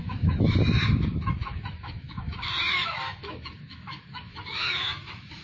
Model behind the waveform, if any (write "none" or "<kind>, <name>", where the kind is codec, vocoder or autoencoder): autoencoder, DAC-VAE